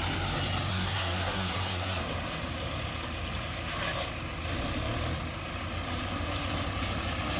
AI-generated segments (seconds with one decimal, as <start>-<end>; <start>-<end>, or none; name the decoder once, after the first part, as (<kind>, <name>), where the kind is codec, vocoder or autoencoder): 0.7-2.0 (codec, SNAC)